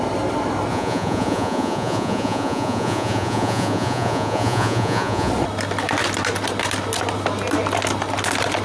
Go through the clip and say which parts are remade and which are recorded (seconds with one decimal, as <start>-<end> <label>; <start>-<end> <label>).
0.0-0.7 recorded; 0.7-5.3 remade; 5.3-8.6 recorded